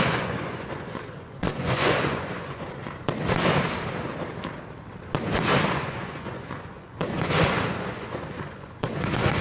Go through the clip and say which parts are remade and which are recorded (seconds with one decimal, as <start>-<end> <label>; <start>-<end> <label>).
0.0-2.8 remade; 2.8-5.7 recorded; 5.7-9.4 remade